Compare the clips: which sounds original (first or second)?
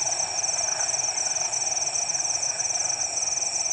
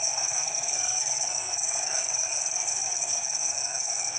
first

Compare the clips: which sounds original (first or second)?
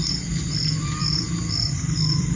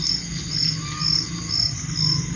second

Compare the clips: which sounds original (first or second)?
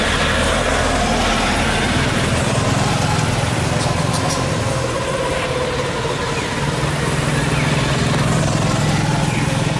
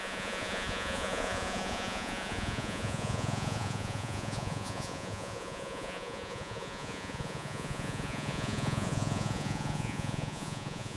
first